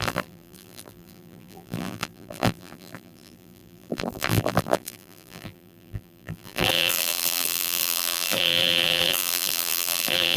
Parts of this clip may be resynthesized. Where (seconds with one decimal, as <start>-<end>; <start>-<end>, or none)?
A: 0.0-10.4